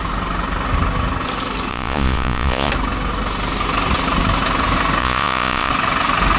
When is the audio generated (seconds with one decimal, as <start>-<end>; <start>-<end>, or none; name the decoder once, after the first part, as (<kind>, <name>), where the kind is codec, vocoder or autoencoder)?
1.7-2.7 (vocoder, Vocos); 5.0-5.7